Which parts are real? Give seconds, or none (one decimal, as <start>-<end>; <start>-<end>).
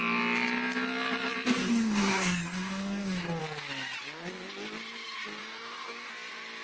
0.0-1.6; 3.4-5.4; 6.1-6.6